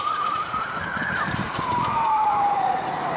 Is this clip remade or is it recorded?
remade